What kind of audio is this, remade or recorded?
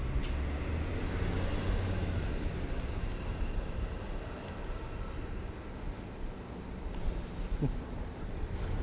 recorded